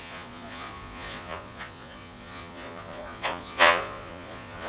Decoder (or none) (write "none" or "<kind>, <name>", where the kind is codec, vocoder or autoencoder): vocoder, Vocos